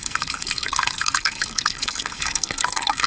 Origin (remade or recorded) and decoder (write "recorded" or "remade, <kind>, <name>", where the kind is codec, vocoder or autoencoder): remade, codec, SNAC